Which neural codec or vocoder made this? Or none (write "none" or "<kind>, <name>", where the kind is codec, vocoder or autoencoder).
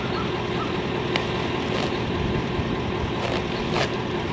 none